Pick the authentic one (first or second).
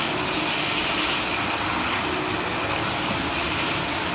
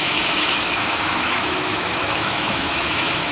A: first